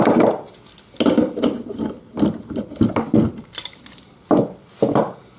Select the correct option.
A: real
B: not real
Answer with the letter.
A